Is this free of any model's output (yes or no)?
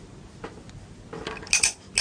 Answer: yes